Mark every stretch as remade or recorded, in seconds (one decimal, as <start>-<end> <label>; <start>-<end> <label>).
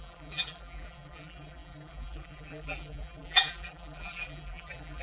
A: 0.0-5.0 remade